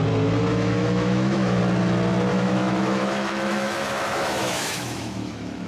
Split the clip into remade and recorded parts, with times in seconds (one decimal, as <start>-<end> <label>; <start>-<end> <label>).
0.0-0.5 recorded; 0.5-1.6 remade; 1.6-2.3 recorded; 2.3-5.7 remade